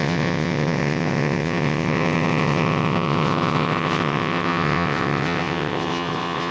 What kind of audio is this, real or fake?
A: fake